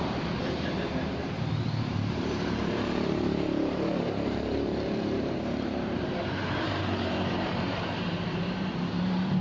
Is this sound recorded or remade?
remade